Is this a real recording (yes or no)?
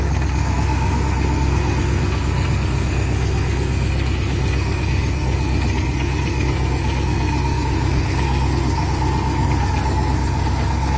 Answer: no